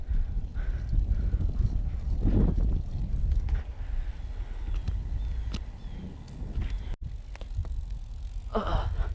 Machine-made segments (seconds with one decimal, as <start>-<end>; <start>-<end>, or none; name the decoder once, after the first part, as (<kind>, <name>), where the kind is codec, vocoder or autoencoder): 7.6-8.1 (vocoder, BigVGAN v2)